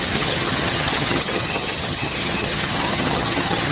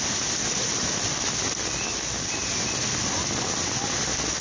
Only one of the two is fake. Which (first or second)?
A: first